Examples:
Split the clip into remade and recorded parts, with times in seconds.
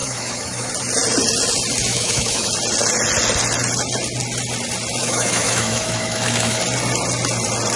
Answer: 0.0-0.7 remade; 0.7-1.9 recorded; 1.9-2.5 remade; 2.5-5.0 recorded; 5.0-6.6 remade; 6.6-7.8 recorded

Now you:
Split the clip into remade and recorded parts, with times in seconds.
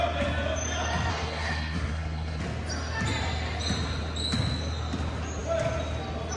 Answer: 0.0-1.1 recorded; 1.1-2.4 remade; 2.4-6.4 recorded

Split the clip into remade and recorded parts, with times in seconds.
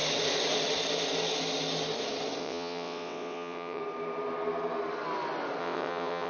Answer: 0.0-2.4 recorded; 2.4-3.8 remade; 3.8-5.6 recorded; 5.6-6.3 remade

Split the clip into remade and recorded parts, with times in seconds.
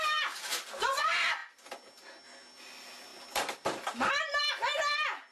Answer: 0.0-5.3 recorded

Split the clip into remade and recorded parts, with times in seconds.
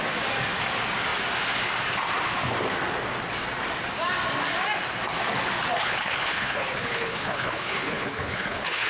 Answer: 0.0-5.8 recorded; 5.8-8.9 remade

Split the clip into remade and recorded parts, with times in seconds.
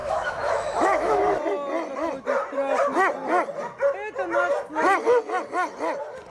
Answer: 0.0-1.2 remade; 1.2-6.3 recorded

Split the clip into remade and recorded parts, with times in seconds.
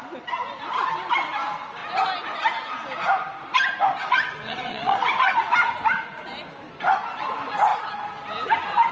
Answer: 0.0-4.0 recorded; 4.0-5.4 remade; 5.4-8.9 recorded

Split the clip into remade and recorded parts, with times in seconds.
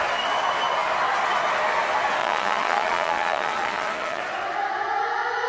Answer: 0.0-2.2 recorded; 2.2-4.2 remade; 4.2-5.5 recorded